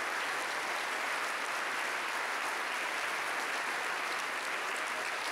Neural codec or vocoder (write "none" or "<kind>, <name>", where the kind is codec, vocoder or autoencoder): none